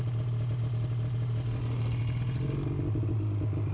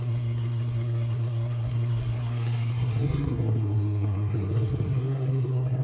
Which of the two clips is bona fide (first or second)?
first